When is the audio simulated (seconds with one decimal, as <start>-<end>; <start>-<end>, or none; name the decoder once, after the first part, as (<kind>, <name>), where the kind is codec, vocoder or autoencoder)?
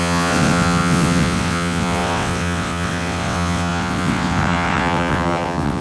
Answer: 0.0-5.8 (vocoder, WaveNeXt)